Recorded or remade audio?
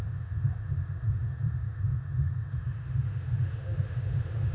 remade